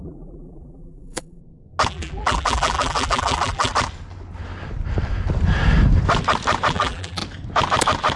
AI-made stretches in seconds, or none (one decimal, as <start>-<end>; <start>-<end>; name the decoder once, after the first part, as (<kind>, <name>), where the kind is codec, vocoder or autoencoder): 0.0-1.4 (vocoder, BigVGAN v2); 1.9-3.7; 6.7-7.2